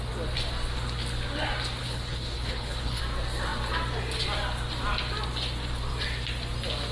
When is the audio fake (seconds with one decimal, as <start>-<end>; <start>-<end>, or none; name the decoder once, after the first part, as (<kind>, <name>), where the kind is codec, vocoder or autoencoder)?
1.8-3.0 (codec, HILCodec)